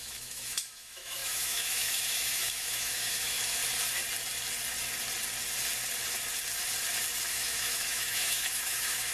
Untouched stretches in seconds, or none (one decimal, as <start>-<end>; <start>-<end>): 3.6-7.3